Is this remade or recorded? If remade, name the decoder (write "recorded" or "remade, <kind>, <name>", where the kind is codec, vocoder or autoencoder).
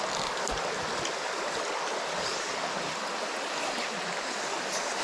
recorded